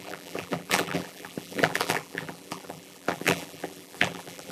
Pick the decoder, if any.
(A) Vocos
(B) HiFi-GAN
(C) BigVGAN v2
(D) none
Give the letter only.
C